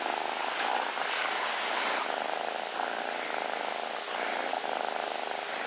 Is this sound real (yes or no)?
yes